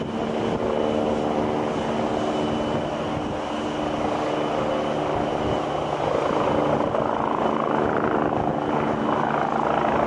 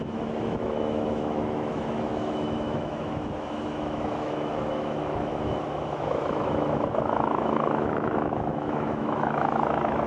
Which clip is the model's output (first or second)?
second